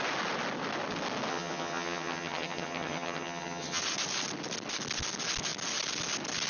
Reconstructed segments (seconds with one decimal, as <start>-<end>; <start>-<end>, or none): 1.3-3.8